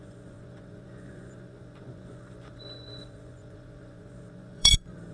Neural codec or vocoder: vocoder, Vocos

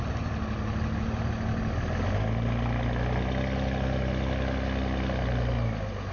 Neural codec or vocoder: none